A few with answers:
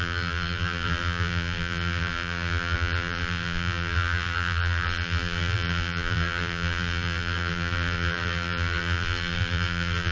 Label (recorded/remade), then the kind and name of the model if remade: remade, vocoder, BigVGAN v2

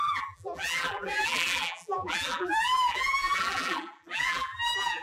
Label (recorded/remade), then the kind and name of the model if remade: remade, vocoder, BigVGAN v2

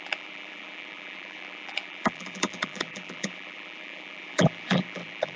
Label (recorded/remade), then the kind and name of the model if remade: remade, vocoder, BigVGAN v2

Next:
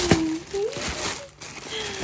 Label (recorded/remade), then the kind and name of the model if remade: recorded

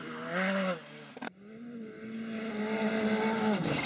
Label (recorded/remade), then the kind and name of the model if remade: recorded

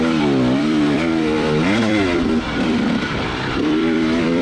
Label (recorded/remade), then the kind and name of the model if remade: remade, vocoder, BigVGAN v2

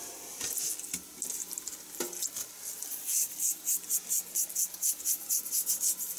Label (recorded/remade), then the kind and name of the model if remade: recorded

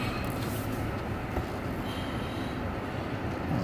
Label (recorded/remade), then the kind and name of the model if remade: recorded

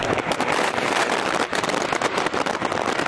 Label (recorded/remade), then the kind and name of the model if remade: remade, vocoder, BigVGAN v2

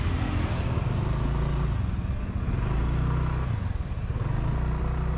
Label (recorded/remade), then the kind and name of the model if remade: recorded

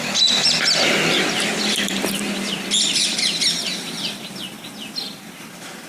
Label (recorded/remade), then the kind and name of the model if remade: recorded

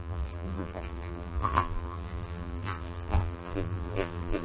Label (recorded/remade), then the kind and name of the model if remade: remade, vocoder, BigVGAN v2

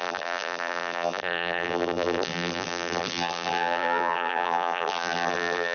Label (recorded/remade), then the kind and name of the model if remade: remade, vocoder, BigVGAN v2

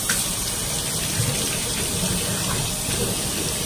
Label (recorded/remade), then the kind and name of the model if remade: remade, vocoder, BigVGAN v2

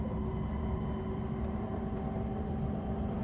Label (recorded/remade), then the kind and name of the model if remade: recorded